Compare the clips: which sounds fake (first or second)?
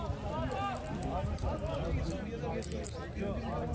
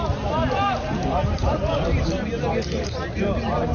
second